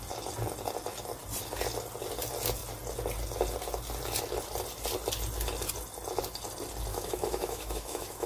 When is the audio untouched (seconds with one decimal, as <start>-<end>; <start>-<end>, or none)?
0.0-6.9